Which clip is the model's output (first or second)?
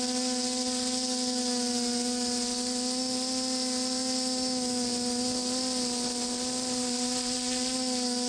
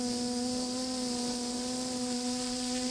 second